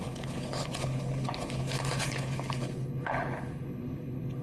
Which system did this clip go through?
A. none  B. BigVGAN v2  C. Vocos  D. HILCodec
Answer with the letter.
D